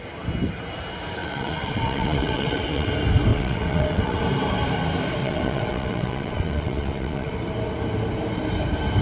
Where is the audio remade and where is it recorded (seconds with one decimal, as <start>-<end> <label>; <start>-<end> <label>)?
0.0-1.2 recorded; 1.2-2.9 remade; 2.9-3.3 recorded; 3.3-4.2 remade; 4.2-5.2 recorded; 5.2-7.3 remade; 7.3-9.0 recorded